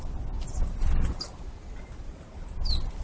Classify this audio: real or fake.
real